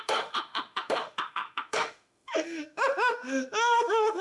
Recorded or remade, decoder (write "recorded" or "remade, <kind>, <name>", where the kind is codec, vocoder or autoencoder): remade, autoencoder, DAC-VAE